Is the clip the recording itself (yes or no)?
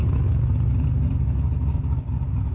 yes